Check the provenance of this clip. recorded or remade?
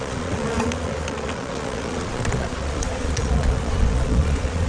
remade